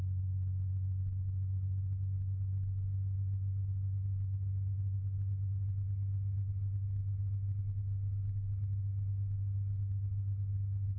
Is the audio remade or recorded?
recorded